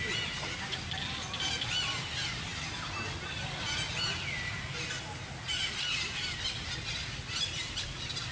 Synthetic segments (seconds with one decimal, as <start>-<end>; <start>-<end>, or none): none